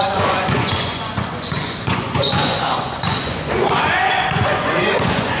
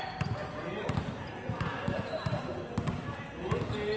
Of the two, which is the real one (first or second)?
second